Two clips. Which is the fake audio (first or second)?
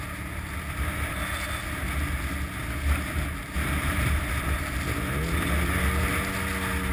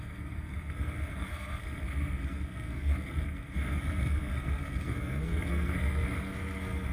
second